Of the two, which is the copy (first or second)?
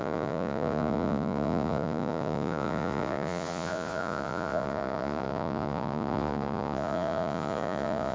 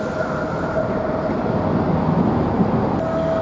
first